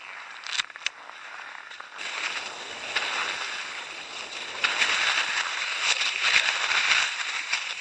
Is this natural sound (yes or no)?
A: yes